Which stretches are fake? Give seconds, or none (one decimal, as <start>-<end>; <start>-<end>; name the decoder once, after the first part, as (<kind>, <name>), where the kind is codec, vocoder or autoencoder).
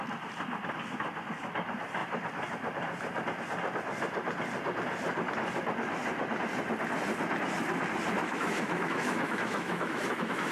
8.2-10.5 (autoencoder, DAC-VAE)